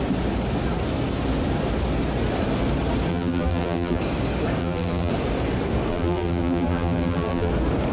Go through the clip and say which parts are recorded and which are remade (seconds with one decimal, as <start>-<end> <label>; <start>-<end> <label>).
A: 0.0-3.1 recorded; 3.1-4.0 remade; 4.0-4.6 recorded; 4.6-5.1 remade; 5.1-5.9 recorded; 5.9-7.5 remade; 7.5-7.9 recorded